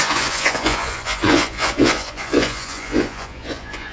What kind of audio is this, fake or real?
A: fake